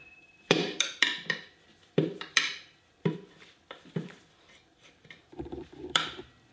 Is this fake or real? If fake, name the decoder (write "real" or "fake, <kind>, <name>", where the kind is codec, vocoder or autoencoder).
fake, vocoder, BigVGAN v2